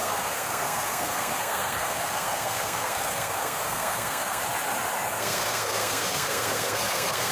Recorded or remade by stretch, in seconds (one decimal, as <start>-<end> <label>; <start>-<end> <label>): 0.0-4.4 remade; 4.4-5.1 recorded; 5.1-7.3 remade